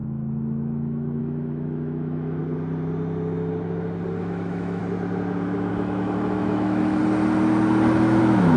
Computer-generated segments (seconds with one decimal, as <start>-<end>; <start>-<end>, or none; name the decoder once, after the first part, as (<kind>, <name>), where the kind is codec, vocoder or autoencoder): 0.0-2.4 (autoencoder, DAC-VAE); 4.2-4.8; 5.7-7.0; 8.2-8.6